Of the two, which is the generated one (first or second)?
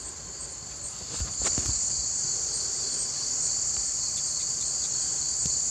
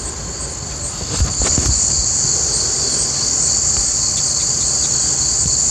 first